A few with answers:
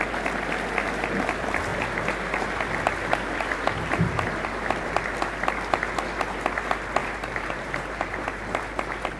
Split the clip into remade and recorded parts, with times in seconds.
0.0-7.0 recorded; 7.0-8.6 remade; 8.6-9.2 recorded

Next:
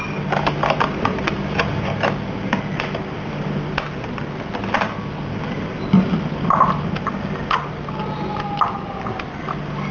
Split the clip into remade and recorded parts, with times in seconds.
0.0-9.9 recorded